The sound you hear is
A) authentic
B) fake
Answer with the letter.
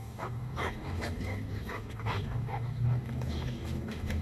B